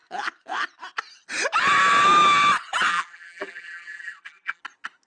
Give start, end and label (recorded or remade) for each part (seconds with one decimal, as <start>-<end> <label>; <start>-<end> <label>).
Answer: 0.0-2.9 recorded; 2.9-4.6 remade; 4.6-5.1 recorded